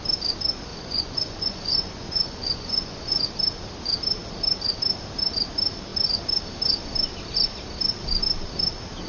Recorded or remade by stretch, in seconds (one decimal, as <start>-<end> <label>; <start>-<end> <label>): 0.0-0.7 recorded; 0.7-3.2 remade; 3.2-9.1 recorded